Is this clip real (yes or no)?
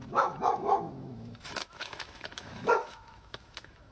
no